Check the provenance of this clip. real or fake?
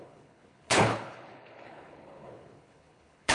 fake